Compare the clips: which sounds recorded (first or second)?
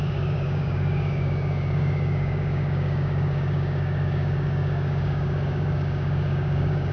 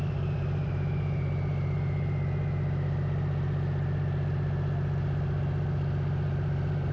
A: second